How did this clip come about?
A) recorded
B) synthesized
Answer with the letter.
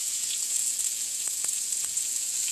B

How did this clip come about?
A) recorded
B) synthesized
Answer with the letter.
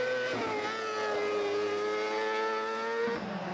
A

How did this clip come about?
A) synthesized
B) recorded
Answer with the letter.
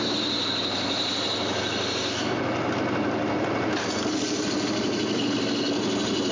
B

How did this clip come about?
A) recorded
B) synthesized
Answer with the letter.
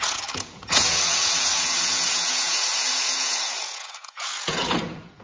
B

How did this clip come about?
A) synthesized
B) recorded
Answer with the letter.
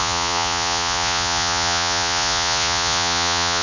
A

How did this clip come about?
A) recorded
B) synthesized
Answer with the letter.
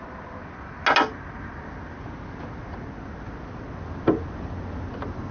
A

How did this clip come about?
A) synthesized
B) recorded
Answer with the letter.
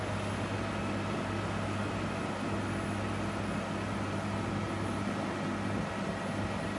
B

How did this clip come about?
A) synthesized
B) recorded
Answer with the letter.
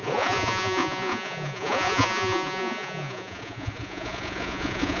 A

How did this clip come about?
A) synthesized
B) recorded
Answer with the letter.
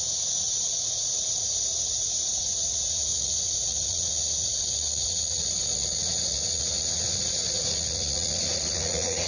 A